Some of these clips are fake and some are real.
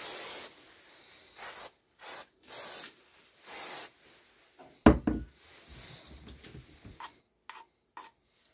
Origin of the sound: real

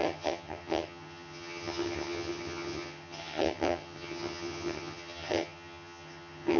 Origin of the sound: fake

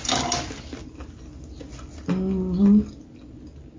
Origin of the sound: real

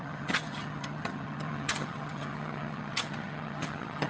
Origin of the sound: fake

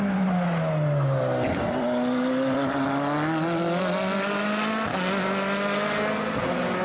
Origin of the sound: real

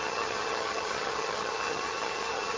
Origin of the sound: fake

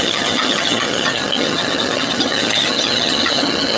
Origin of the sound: fake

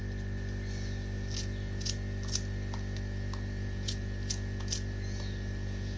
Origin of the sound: real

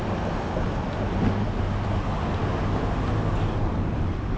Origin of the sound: real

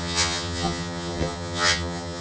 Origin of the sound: fake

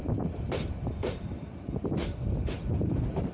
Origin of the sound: real